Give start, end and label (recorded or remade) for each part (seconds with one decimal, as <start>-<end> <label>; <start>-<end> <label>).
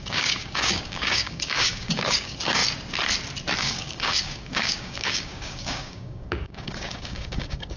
0.0-2.6 remade; 2.6-3.6 recorded; 3.6-7.8 remade